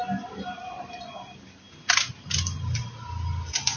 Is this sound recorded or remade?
recorded